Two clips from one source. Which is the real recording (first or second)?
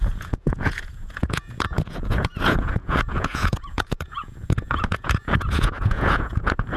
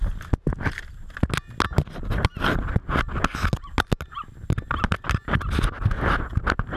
second